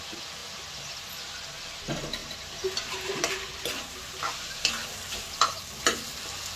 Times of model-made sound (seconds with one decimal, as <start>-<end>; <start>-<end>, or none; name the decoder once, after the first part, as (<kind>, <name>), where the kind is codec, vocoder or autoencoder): 2.2-3.5 (vocoder, BigVGAN v2)